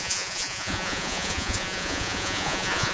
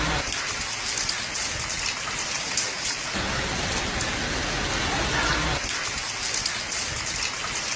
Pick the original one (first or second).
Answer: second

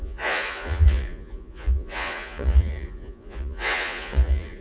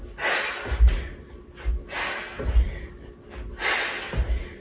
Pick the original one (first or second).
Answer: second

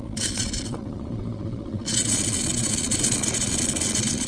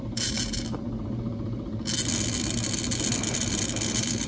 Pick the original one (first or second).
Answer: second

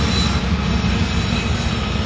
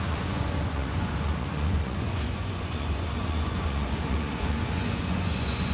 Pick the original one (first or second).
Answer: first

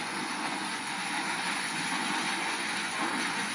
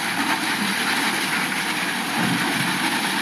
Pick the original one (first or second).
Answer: second